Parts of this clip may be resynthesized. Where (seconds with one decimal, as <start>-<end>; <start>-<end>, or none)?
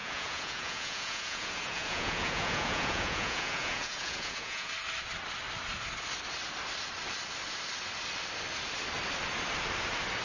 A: 0.0-4.7